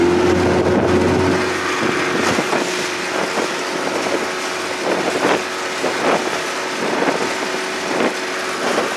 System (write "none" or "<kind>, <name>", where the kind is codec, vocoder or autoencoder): none